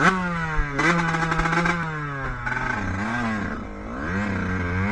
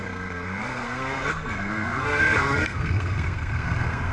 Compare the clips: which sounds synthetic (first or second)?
second